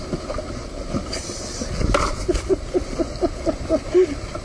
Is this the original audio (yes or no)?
yes